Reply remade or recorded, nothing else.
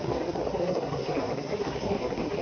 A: remade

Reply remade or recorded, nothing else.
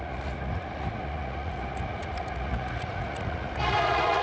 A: remade